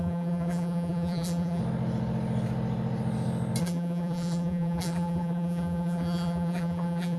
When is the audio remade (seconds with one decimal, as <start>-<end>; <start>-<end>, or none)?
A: 0.0-1.6; 3.6-7.2